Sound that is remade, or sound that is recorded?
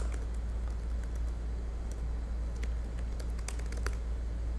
recorded